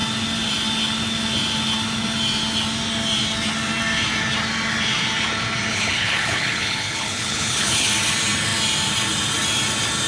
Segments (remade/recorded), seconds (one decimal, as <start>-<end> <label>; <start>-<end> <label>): 0.0-5.7 recorded; 5.7-7.9 remade; 7.9-10.1 recorded